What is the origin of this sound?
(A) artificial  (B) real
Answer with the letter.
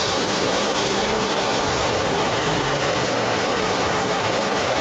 A